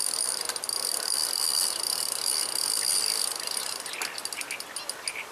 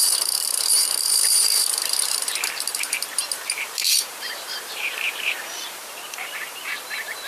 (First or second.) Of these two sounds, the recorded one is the first